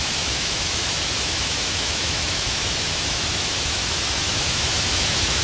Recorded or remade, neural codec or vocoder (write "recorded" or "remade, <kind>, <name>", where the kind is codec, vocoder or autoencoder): remade, autoencoder, DAC-VAE